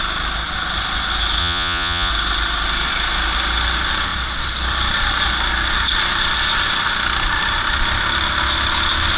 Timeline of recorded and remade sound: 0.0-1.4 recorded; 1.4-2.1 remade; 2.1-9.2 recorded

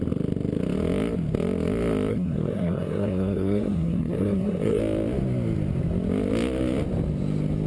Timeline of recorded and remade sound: 0.0-2.1 recorded; 2.1-4.8 remade; 4.8-7.7 recorded